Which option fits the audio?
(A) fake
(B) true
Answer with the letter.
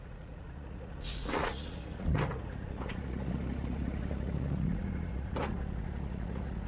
A